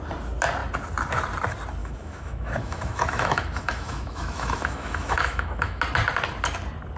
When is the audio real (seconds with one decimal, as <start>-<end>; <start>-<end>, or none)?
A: 0.0-1.8; 5.8-7.0